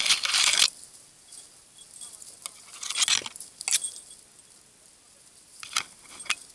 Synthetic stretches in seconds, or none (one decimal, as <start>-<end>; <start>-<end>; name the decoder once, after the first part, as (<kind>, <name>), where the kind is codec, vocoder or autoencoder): none